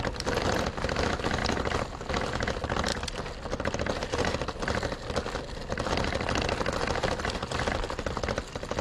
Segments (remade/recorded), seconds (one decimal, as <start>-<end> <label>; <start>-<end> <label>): 0.0-8.8 recorded